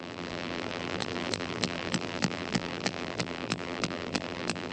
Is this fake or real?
fake